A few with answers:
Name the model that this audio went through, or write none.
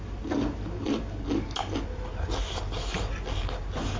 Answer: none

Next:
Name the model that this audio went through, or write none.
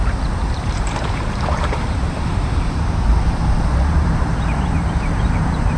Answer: vocoder, BigVGAN v2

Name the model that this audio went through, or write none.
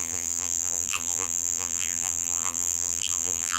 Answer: vocoder, BigVGAN v2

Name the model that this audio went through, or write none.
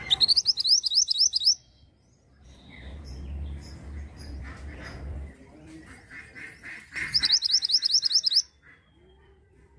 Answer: none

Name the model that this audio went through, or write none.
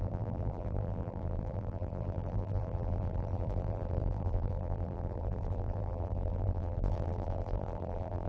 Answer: vocoder, BigVGAN v2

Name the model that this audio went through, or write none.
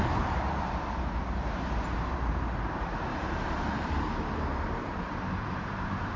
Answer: vocoder, BigVGAN v2